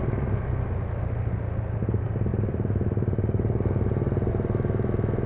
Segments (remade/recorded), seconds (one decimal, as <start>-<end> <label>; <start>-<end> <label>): 0.0-5.3 recorded